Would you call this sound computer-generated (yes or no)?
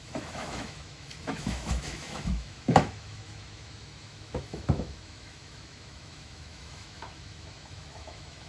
yes